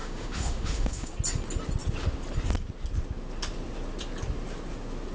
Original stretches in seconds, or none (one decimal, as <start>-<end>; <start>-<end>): 1.1-5.1